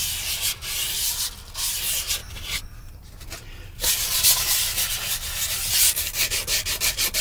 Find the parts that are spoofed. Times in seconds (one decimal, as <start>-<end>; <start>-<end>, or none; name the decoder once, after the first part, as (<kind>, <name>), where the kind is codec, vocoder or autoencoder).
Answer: 2.2-3.9 (vocoder, BigVGAN v2)